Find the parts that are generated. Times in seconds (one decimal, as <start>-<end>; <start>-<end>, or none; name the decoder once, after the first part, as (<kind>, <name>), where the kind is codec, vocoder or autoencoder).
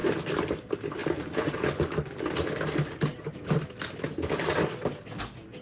none